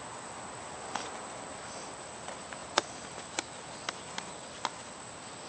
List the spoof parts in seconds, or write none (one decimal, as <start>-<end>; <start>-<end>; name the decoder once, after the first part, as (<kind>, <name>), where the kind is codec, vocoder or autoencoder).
none